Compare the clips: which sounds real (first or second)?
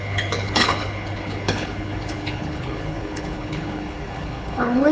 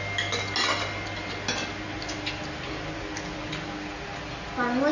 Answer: second